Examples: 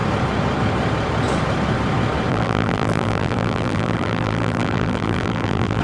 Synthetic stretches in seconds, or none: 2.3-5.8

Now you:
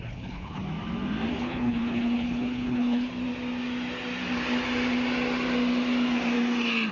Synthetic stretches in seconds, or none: 0.0-0.6; 1.3-3.1

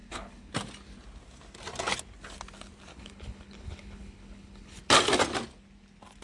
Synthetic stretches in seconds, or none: 0.0-0.5; 2.9-4.8